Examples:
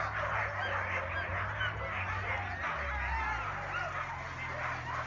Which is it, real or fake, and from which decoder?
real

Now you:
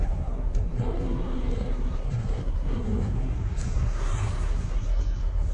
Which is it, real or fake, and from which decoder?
fake, codec, SNAC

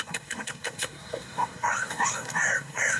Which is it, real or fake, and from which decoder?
fake, codec, SNAC